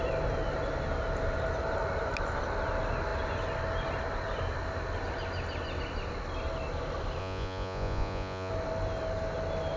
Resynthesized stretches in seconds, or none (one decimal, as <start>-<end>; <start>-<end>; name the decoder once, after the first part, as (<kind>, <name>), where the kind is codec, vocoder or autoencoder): 7.2-8.5 (vocoder, Vocos)